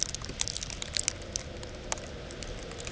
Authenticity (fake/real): real